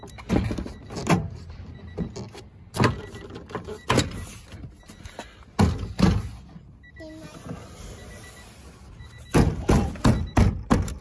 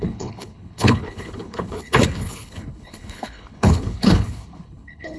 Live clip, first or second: first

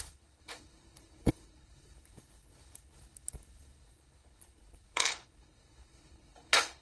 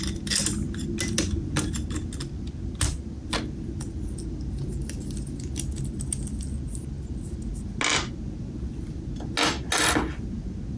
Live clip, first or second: second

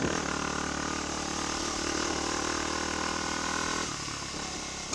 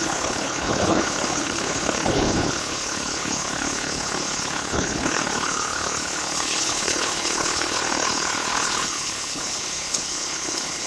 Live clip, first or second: first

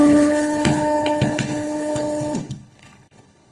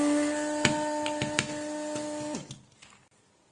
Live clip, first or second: second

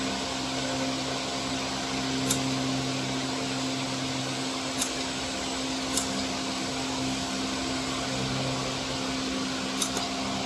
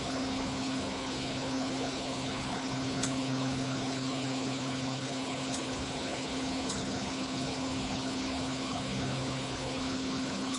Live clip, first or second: first